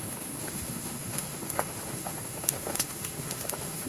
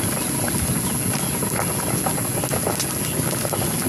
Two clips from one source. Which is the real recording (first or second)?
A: second